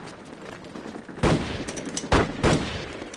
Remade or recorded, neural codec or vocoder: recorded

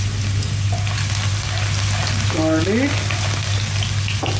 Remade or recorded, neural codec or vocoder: recorded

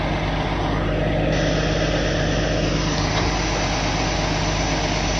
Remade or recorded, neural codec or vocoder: recorded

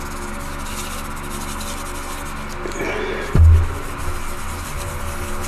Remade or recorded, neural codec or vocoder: recorded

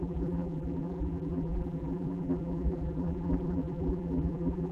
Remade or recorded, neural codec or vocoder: remade, vocoder, BigVGAN v2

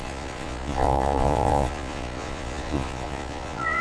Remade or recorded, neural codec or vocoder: remade, vocoder, Vocos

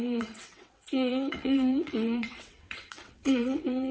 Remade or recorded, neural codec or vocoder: remade, vocoder, WaveNeXt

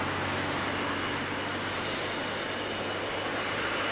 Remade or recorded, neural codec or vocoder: recorded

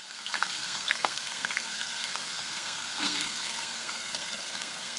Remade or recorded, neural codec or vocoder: remade, codec, SNAC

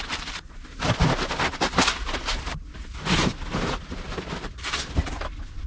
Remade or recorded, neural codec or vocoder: recorded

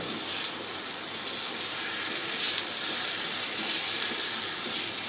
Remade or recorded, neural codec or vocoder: remade, vocoder, BigVGAN v2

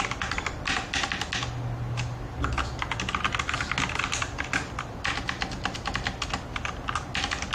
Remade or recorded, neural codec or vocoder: recorded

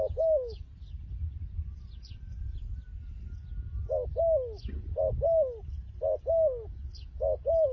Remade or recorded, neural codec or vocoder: recorded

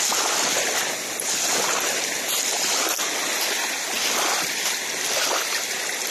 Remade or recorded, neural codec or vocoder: recorded